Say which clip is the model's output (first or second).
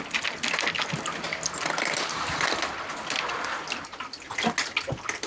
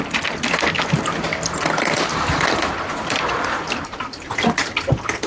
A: second